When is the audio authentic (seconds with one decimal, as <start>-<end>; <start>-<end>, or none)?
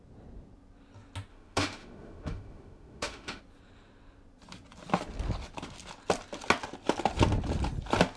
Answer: 0.0-1.3; 3.4-8.2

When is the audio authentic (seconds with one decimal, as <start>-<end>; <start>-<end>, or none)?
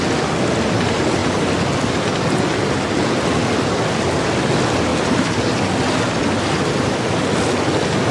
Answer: 0.0-8.1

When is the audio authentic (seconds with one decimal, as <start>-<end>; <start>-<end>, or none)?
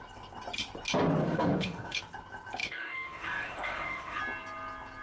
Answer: 0.0-1.2; 2.0-2.6; 4.2-5.0